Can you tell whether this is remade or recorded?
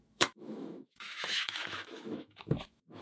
remade